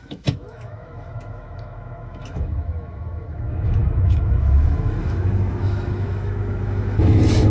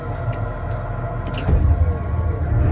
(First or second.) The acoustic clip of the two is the second